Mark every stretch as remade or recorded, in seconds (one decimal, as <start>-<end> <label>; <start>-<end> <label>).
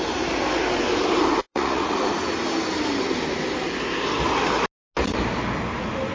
0.0-1.4 recorded; 1.4-2.0 remade; 2.0-6.1 recorded